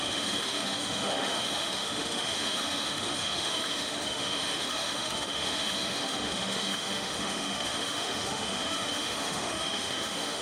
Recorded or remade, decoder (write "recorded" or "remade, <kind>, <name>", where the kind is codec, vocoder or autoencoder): remade, autoencoder, DAC-VAE